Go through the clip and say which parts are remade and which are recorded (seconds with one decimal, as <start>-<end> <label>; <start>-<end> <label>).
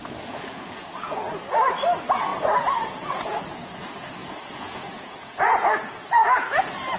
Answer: 0.0-1.3 remade; 1.3-2.3 recorded; 2.3-3.7 remade; 3.7-4.2 recorded; 4.2-5.7 remade; 5.7-7.0 recorded